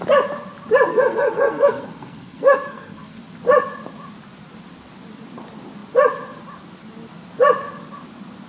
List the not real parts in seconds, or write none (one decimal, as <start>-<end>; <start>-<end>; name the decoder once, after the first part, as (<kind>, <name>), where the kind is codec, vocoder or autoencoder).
0.9-3.2 (codec, SNAC)